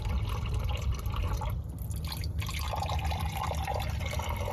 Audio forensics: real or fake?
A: real